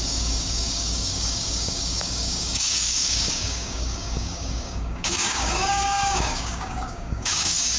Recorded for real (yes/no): no